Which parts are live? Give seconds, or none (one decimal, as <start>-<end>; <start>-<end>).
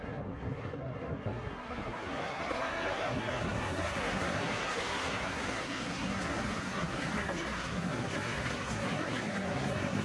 none